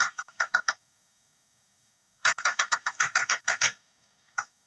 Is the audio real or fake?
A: fake